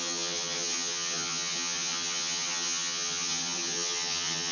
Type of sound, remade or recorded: remade